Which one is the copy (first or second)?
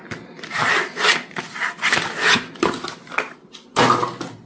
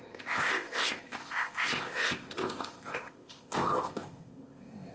second